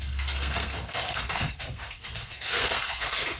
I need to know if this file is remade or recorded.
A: remade